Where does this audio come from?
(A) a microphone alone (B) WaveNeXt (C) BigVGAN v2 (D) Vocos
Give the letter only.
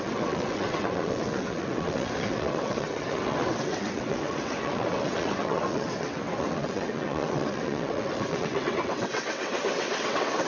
B